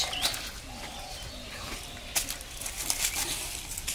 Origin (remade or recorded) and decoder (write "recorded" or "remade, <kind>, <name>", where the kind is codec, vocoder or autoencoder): recorded